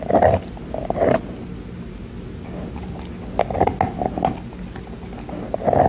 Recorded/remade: recorded